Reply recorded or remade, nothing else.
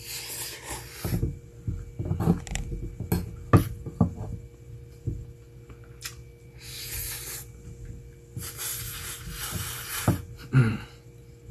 recorded